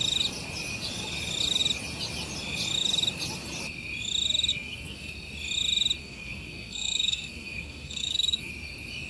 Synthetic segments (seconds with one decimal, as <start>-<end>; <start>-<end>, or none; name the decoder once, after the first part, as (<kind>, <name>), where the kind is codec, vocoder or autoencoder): 4.5-5.1 (codec, SNAC); 6.0-8.5